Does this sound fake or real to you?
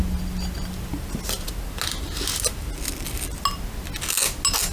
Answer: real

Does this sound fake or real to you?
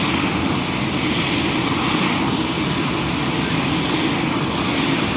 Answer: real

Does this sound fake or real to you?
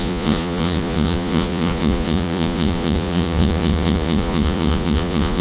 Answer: fake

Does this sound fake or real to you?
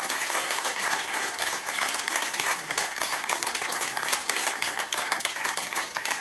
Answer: fake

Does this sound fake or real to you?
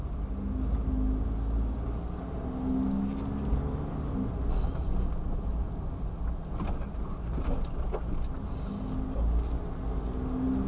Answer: real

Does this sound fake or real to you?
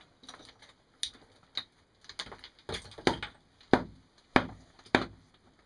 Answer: real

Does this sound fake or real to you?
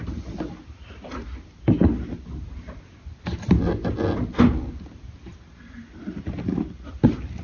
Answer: real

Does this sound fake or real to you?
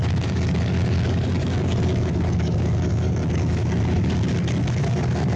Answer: fake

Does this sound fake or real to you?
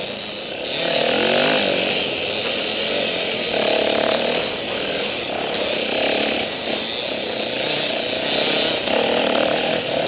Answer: real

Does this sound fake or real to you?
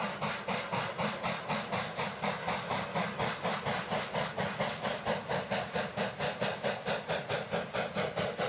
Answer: real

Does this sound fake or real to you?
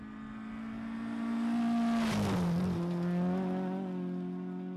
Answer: real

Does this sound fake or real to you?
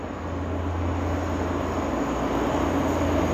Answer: real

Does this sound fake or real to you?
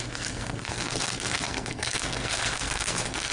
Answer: fake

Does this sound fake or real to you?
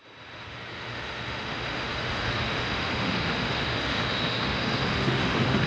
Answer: fake